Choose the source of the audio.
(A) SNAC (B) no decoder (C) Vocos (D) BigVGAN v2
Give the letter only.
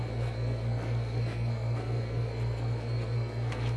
A